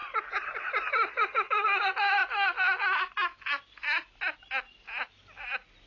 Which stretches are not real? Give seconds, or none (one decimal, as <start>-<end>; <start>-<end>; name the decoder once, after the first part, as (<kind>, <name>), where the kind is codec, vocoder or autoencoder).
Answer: 0.0-1.8 (vocoder, BigVGAN v2)